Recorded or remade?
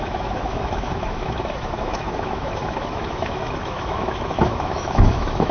remade